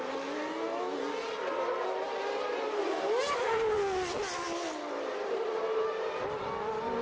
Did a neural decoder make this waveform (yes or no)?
no